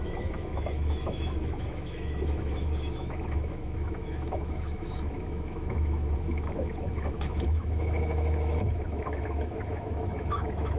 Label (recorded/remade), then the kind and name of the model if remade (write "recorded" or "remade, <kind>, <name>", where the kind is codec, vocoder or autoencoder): remade, autoencoder, DAC-VAE